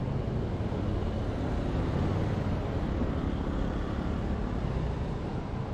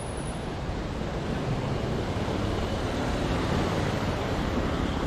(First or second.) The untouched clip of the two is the first